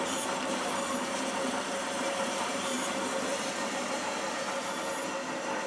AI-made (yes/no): yes